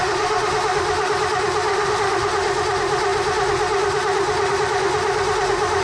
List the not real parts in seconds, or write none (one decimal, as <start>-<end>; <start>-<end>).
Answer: 0.0-0.5; 1.7-2.3